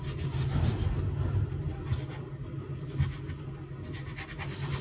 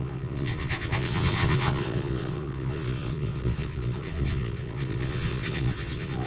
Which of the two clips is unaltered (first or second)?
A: first